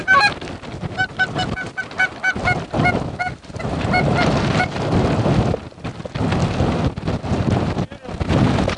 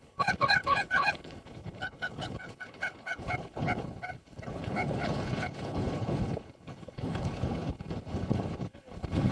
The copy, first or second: second